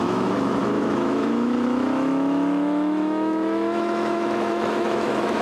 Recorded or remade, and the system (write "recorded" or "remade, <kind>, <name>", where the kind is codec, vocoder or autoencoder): remade, autoencoder, DAC-VAE